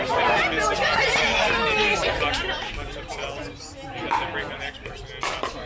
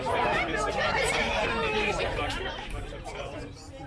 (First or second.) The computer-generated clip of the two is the second